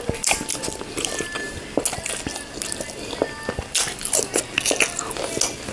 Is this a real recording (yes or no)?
yes